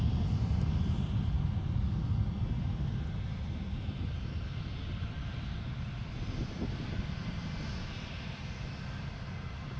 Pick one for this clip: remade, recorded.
recorded